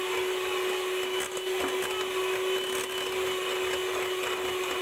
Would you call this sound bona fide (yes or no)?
yes